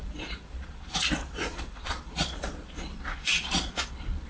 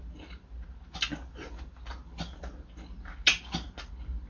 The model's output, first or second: first